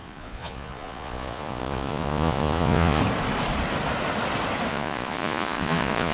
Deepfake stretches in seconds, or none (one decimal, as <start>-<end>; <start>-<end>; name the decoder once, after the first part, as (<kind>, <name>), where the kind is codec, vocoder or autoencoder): 0.0-3.0 (vocoder, Vocos); 4.7-6.1